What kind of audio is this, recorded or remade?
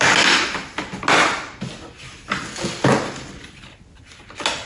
recorded